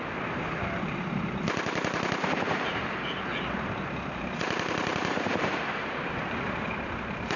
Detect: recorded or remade remade